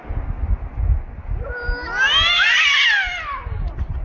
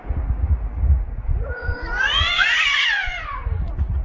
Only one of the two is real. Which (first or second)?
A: first